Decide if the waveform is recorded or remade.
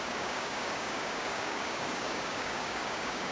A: remade